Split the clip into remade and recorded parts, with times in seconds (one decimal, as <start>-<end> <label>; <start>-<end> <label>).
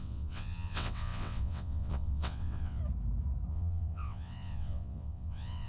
0.0-2.8 remade; 2.8-3.5 recorded; 3.5-5.7 remade